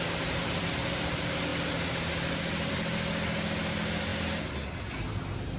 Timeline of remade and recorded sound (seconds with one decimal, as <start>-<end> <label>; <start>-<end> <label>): 0.0-5.6 recorded